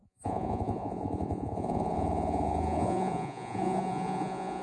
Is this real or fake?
fake